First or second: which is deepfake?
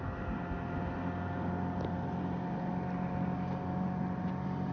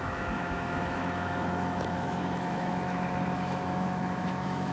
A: second